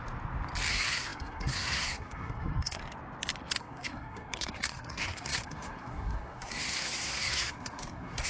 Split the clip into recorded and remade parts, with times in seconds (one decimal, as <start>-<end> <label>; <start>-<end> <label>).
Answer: 0.0-0.7 recorded; 0.7-2.8 remade; 2.8-3.6 recorded; 3.6-8.3 remade